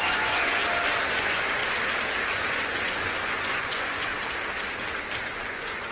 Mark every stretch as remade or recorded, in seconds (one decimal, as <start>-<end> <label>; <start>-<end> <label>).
0.0-0.6 remade; 0.6-1.1 recorded; 1.1-1.6 remade; 1.6-2.3 recorded; 2.3-4.1 remade; 4.1-5.2 recorded; 5.2-5.9 remade